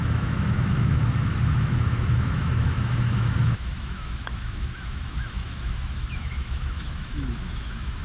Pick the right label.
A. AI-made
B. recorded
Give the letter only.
A